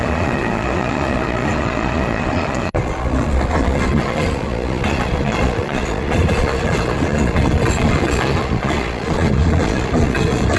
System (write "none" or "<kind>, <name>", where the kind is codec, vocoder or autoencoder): vocoder, Vocos